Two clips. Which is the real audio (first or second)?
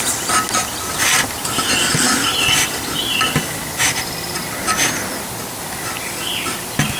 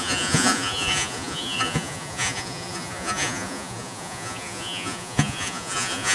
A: first